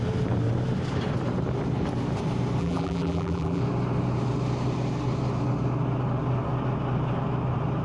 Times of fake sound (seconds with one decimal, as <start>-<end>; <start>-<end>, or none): 2.6-3.6